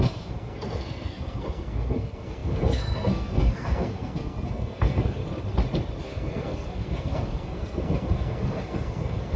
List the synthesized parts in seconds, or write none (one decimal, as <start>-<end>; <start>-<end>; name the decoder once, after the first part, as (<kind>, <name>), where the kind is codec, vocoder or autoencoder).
0.0-5.2 (codec, SNAC); 6.0-9.4